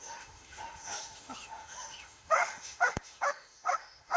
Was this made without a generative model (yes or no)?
no